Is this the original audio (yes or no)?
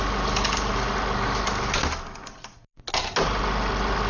yes